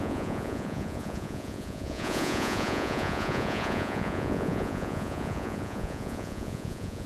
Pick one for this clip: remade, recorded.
remade